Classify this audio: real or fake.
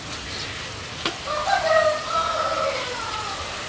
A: real